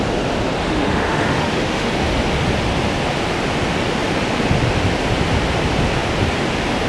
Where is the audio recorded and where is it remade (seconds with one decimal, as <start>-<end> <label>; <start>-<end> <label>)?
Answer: 0.0-0.6 recorded; 0.6-1.9 remade; 1.9-6.9 recorded